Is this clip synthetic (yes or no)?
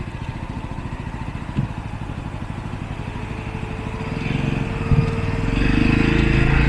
no